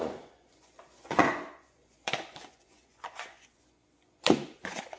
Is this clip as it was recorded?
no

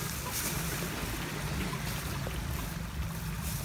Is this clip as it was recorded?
yes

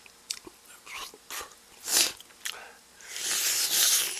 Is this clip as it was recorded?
yes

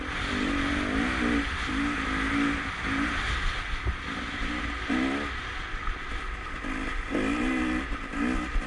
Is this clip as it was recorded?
yes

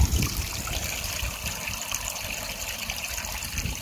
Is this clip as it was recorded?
no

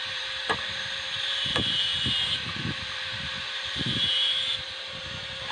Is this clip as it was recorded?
no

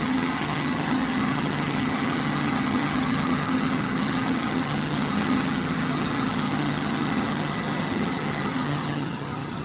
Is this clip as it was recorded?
no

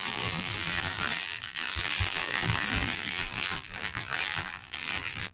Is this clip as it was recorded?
no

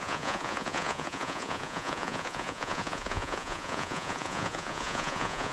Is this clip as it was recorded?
no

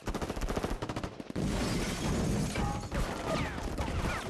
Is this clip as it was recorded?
no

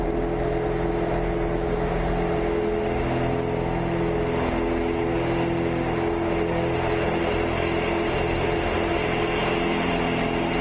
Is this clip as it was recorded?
yes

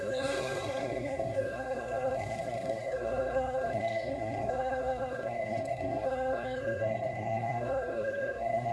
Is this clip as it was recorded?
no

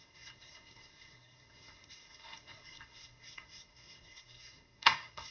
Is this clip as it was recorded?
no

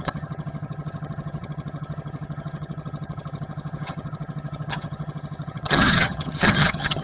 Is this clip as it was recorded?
no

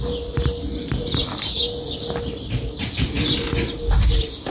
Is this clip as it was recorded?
yes